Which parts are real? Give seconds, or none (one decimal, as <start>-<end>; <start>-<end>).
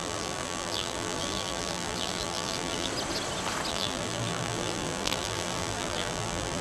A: 2.9-3.7